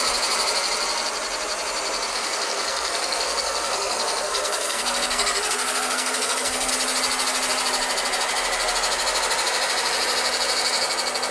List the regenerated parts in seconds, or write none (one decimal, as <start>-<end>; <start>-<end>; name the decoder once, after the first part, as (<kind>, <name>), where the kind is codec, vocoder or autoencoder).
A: 2.1-6.7 (codec, SNAC)